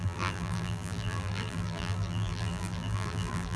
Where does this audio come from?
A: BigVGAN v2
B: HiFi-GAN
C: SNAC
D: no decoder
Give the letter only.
A